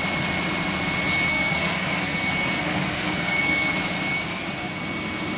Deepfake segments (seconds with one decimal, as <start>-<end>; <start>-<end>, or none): 1.3-3.7